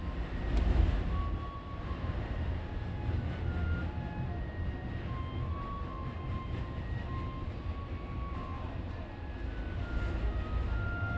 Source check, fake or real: real